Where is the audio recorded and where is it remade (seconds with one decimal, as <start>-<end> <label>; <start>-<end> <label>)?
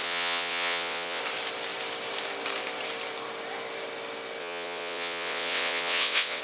0.0-1.2 remade; 1.2-4.4 recorded; 4.4-6.4 remade